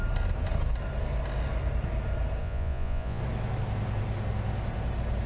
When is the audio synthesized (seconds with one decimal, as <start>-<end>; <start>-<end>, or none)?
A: 2.4-3.2